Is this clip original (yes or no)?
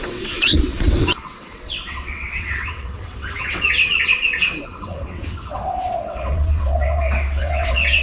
no